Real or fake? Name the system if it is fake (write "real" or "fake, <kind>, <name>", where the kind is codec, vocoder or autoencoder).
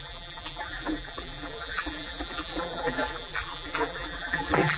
fake, vocoder, BigVGAN v2